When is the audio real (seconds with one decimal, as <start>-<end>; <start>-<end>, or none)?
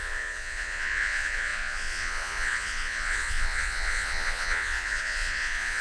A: none